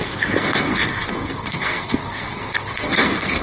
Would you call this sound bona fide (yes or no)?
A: no